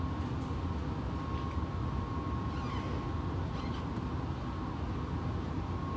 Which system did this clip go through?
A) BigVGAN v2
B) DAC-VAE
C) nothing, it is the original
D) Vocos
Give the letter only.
C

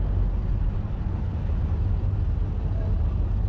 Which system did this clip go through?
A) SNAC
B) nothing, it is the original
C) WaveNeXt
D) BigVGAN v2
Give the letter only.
B